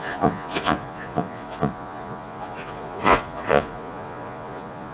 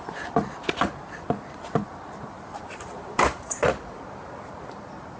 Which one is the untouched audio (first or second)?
second